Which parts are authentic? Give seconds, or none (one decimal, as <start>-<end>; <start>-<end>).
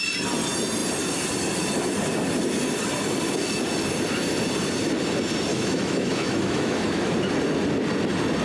0.0-5.5; 7.1-8.4